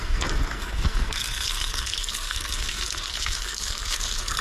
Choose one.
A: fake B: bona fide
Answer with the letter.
A